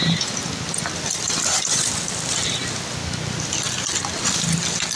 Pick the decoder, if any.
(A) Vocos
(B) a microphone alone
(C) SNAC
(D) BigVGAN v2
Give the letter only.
B